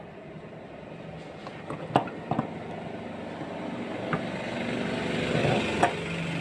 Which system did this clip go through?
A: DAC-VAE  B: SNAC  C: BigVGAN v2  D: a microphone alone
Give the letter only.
D